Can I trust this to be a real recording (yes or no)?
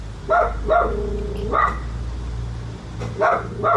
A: yes